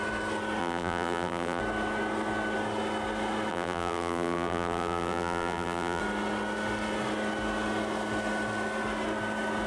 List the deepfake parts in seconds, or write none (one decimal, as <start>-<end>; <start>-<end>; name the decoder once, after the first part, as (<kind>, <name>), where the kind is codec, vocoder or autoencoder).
0.6-1.6 (vocoder, BigVGAN v2); 3.5-6.0